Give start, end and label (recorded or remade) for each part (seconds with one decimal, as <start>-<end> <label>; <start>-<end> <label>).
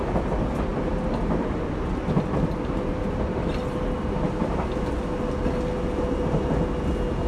0.0-7.3 recorded